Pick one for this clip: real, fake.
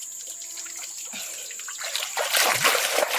real